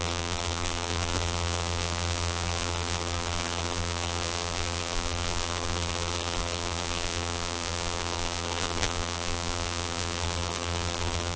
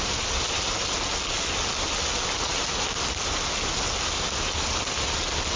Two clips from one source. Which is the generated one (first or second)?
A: first